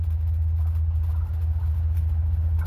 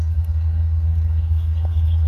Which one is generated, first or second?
second